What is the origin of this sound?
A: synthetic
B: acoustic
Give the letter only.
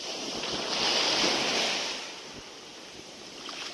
B